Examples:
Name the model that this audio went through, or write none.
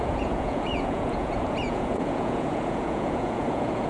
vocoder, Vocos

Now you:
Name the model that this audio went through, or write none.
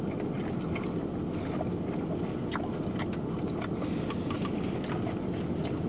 none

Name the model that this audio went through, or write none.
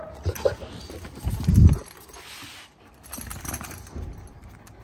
none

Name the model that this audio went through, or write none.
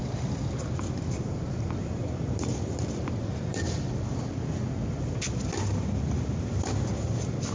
none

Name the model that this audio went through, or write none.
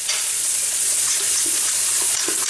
vocoder, Vocos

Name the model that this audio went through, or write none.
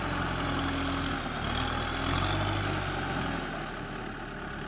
none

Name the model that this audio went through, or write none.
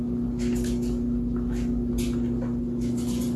none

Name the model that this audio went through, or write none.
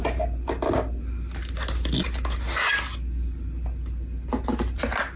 none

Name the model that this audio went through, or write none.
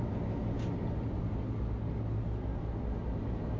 none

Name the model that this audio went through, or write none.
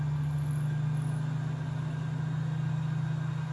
none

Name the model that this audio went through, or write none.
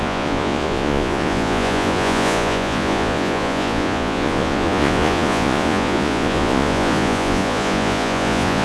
vocoder, Vocos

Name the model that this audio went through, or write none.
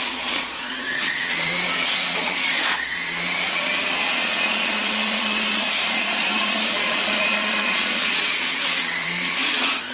vocoder, Vocos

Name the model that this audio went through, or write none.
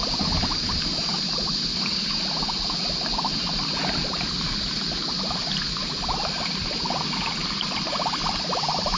none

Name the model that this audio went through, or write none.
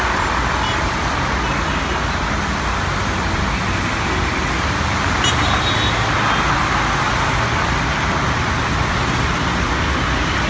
none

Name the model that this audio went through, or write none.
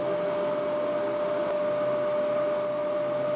none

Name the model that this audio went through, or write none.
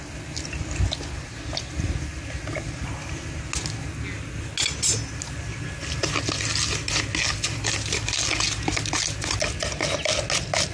none